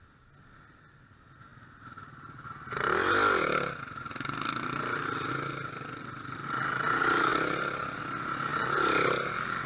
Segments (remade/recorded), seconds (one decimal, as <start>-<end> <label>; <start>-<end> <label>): 0.0-9.7 recorded